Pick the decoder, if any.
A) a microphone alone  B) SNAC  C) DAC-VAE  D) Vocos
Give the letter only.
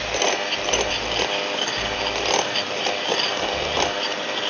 A